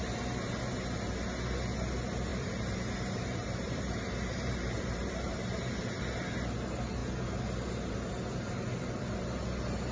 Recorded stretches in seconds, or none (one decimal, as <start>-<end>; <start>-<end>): 0.0-2.3; 6.0-9.9